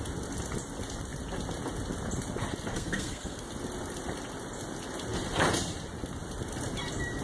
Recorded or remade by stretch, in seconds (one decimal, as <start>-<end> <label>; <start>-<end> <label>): 0.0-2.7 recorded; 2.7-3.5 remade; 3.5-7.2 recorded